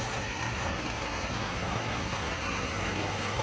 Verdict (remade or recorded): remade